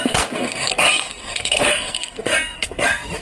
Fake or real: fake